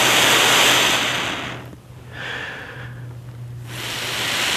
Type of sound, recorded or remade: recorded